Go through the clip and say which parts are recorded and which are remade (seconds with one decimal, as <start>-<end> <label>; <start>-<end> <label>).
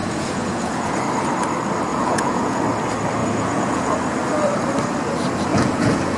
0.0-1.0 remade; 1.0-1.9 recorded; 1.9-2.6 remade; 2.6-3.2 recorded; 3.2-3.9 remade; 3.9-5.5 recorded; 5.5-6.2 remade